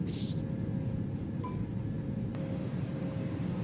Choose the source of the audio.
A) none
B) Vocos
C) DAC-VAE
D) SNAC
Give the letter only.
A